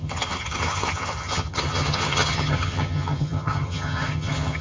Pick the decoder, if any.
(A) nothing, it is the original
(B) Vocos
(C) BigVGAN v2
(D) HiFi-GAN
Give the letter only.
D